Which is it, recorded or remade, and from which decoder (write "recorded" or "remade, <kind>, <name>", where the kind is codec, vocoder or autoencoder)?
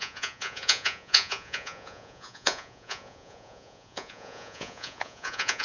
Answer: remade, vocoder, Vocos